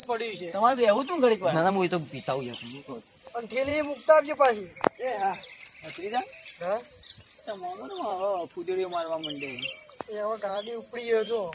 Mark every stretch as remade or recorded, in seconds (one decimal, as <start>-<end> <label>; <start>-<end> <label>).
0.0-11.5 remade